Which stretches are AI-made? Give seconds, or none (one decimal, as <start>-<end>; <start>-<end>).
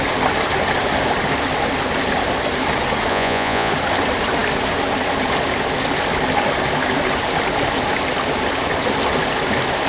3.1-3.7